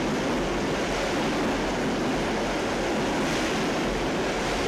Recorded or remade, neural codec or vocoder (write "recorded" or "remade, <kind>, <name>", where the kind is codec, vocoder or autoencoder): recorded